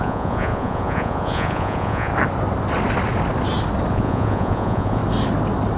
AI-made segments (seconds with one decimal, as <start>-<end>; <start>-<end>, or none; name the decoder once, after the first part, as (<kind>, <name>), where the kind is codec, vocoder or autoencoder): 0.0-2.1 (vocoder, Vocos); 3.9-5.0